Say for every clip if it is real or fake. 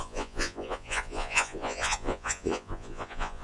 fake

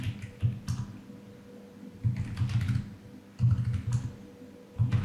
real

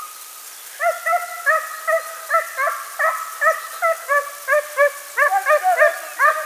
real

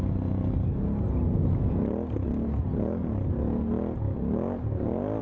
real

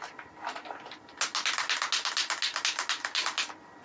real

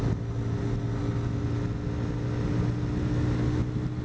real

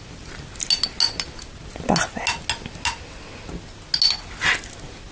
real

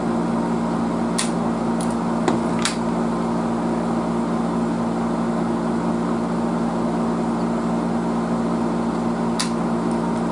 real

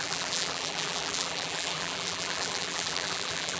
fake